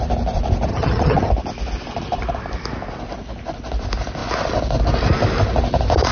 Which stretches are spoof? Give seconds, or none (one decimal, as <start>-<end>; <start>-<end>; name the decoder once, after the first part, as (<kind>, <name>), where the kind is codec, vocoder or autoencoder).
0.7-1.3 (vocoder, HiFi-GAN)

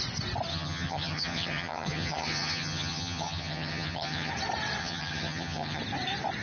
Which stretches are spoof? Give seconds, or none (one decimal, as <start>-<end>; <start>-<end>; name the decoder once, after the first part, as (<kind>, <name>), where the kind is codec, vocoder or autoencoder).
0.5-4.3 (vocoder, HiFi-GAN); 4.8-5.8

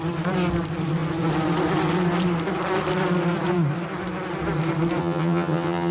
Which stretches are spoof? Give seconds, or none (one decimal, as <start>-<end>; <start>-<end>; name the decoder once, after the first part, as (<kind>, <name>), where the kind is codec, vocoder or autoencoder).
5.0-5.9 (vocoder, HiFi-GAN)